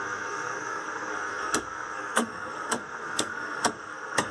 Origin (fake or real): fake